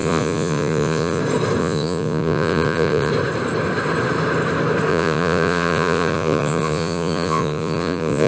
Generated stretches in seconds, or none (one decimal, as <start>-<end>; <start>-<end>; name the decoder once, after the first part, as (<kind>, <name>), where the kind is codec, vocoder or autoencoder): 0.0-1.2 (vocoder, Vocos); 1.6-3.1; 4.9-8.3